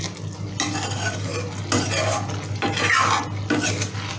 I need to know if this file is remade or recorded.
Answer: recorded